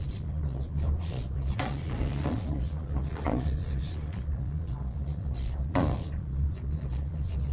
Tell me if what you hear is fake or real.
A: fake